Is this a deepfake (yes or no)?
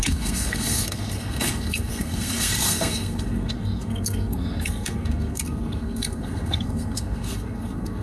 yes